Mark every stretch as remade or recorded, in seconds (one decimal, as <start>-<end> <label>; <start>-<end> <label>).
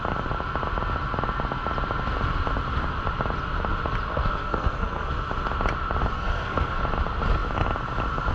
0.0-4.1 recorded; 4.1-5.1 remade; 5.1-6.1 recorded; 6.1-6.8 remade; 6.8-8.3 recorded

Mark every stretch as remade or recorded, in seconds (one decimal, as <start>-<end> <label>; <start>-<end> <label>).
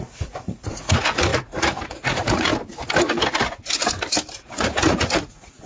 0.0-2.5 remade; 2.5-4.4 recorded; 4.4-5.7 remade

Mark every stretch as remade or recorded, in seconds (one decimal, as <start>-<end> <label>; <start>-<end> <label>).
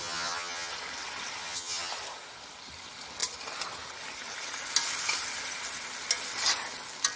0.0-0.7 remade; 0.7-1.4 recorded; 1.4-1.9 remade; 1.9-7.2 recorded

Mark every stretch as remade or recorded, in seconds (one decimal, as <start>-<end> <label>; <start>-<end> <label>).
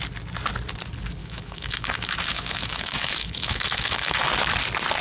0.0-1.2 recorded; 1.2-4.2 remade; 4.2-5.0 recorded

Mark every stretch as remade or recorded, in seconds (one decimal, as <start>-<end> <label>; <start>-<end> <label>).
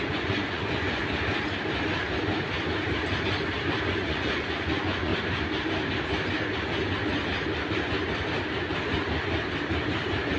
0.0-1.0 remade; 1.0-3.9 recorded; 3.9-5.1 remade; 5.1-10.4 recorded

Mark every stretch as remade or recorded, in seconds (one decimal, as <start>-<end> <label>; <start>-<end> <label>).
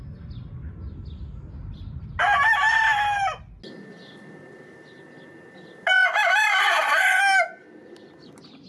0.0-6.6 recorded; 6.6-7.2 remade; 7.2-8.7 recorded